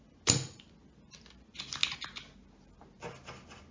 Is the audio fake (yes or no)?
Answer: no